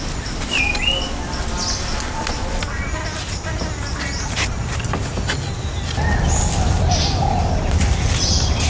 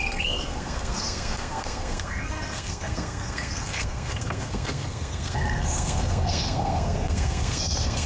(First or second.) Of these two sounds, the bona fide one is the first